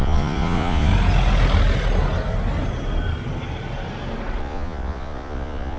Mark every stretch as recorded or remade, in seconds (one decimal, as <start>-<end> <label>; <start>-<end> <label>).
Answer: 0.0-0.9 remade; 0.9-4.4 recorded; 4.4-5.8 remade